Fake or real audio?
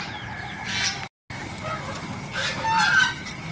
real